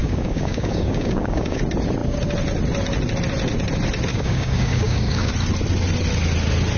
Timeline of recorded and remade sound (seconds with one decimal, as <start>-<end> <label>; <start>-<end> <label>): 0.0-1.6 remade; 1.6-4.1 recorded; 4.1-5.3 remade; 5.3-6.8 recorded